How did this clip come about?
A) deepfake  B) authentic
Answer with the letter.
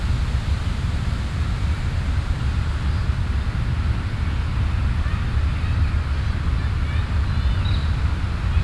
B